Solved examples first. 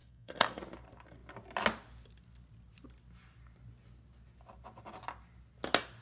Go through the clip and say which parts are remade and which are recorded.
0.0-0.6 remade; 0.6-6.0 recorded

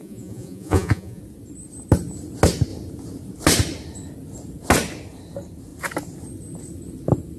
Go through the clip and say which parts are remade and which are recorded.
0.0-1.2 remade; 1.2-7.4 recorded

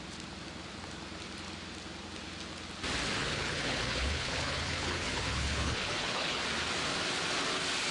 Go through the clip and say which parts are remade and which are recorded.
0.0-3.2 recorded; 3.2-6.4 remade; 6.4-7.9 recorded

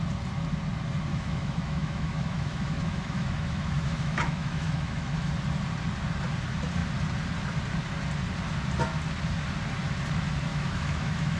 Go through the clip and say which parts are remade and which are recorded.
0.0-1.1 recorded; 1.1-5.3 remade; 5.3-10.5 recorded; 10.5-11.4 remade

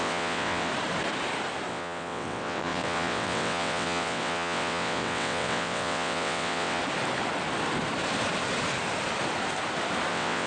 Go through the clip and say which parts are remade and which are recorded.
0.0-0.7 remade; 0.7-1.7 recorded; 1.7-6.8 remade; 6.8-10.1 recorded; 10.1-10.5 remade

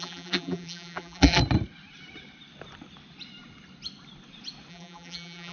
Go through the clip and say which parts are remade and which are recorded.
0.0-1.4 remade; 1.4-4.7 recorded; 4.7-5.5 remade

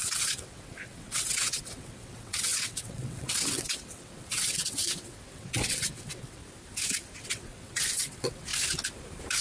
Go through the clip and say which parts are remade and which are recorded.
0.0-6.4 remade; 6.4-7.2 recorded; 7.2-8.5 remade; 8.5-9.4 recorded